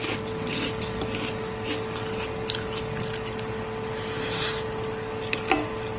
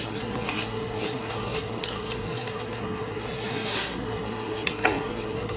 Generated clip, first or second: second